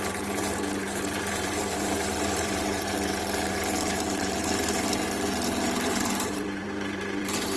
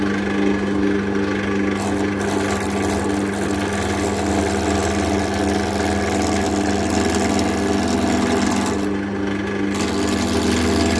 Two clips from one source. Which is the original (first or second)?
second